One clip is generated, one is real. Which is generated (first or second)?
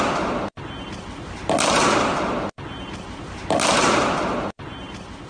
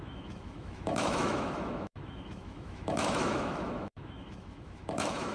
second